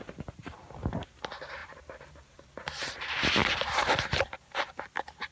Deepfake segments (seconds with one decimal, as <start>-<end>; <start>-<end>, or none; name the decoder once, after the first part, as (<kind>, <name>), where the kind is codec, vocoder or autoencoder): 0.4-0.9 (vocoder, BigVGAN v2); 1.6-4.8